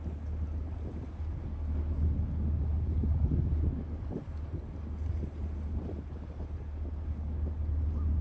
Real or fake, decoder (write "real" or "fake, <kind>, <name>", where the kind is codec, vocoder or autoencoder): real